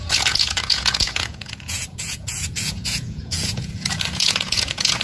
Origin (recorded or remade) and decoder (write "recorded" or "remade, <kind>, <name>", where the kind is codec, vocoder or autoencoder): remade, vocoder, Vocos